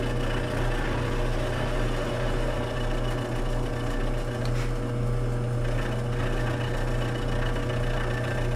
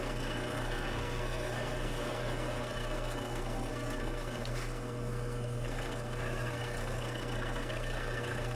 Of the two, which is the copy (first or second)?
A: second